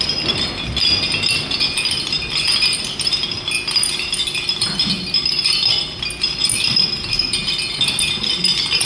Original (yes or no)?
yes